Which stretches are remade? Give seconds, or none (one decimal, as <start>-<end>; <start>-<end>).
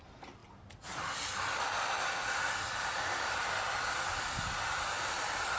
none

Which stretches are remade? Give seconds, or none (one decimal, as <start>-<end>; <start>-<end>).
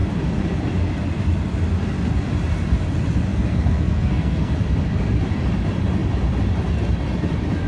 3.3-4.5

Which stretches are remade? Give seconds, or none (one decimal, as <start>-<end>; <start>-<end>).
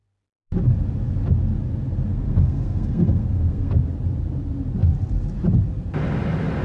2.1-3.7